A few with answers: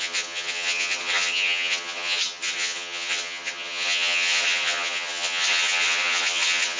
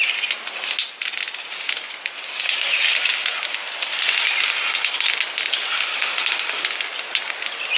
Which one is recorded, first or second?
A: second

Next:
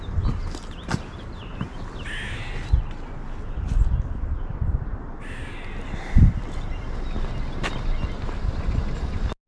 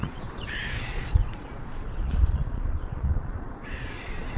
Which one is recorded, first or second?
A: first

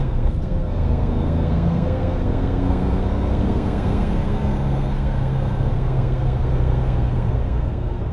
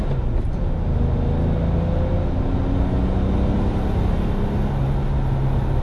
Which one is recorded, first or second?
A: second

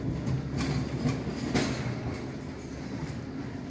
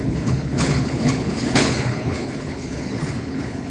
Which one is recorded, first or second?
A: first